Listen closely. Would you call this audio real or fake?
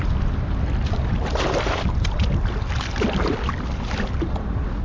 real